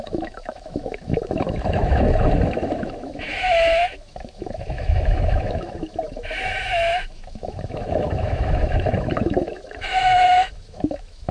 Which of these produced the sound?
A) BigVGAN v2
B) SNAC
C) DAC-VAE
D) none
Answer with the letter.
C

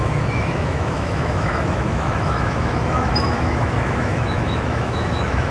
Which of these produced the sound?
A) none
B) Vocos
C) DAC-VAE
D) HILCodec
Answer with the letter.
C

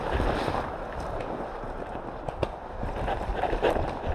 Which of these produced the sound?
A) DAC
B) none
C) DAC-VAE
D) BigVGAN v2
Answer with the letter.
B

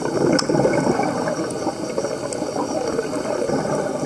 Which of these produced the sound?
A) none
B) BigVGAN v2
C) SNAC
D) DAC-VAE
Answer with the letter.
A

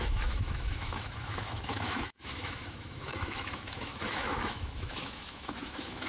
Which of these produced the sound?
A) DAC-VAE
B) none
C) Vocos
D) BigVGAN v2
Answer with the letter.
A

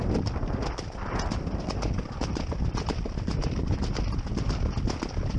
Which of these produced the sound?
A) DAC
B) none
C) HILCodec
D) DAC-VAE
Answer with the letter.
B